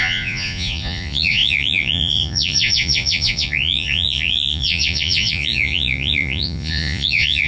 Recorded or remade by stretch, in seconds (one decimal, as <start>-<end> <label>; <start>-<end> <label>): 0.0-7.5 remade